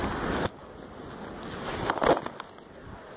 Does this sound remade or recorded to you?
recorded